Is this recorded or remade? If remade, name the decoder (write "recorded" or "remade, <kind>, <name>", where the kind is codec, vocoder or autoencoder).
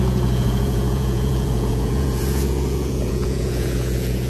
remade, vocoder, Vocos